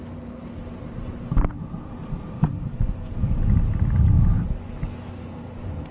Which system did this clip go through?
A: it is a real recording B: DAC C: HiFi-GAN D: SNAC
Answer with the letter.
A